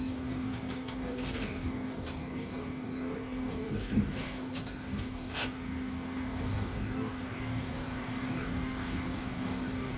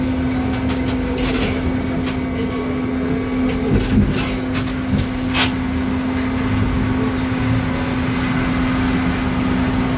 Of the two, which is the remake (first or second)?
first